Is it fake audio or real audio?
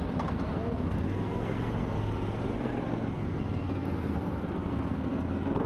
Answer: fake